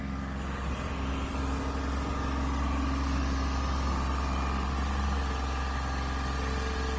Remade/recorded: recorded